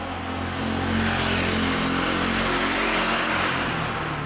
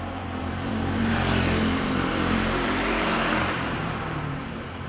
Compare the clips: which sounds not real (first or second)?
second